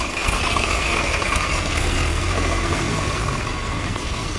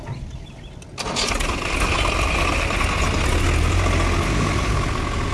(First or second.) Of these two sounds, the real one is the second